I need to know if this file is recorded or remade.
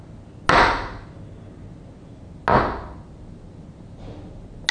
recorded